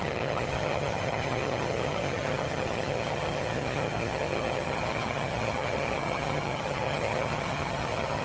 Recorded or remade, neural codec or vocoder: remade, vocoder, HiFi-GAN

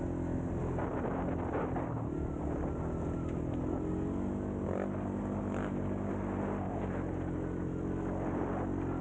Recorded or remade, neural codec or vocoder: recorded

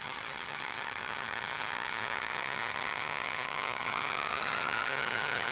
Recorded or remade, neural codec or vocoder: remade, vocoder, HiFi-GAN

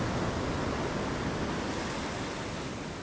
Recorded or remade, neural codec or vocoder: recorded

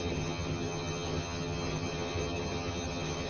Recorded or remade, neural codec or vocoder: remade, vocoder, HiFi-GAN